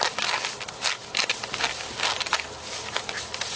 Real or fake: real